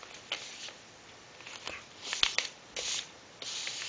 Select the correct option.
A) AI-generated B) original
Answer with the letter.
A